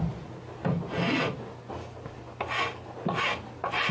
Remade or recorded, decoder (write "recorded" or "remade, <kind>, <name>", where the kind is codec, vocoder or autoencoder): recorded